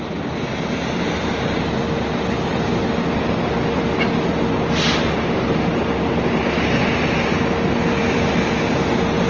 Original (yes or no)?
yes